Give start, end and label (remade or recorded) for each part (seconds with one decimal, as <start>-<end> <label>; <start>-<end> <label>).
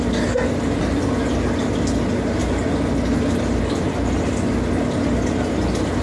0.0-6.0 recorded